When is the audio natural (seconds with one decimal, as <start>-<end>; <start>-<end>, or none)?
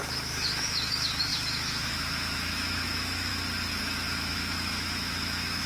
3.3-3.8